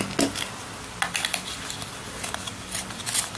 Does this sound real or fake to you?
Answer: real